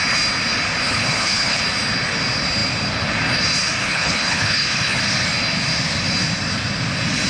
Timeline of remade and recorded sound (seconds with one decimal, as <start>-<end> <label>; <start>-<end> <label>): 0.0-0.9 recorded; 0.9-1.6 remade; 1.6-3.8 recorded; 3.8-5.0 remade; 5.0-7.3 recorded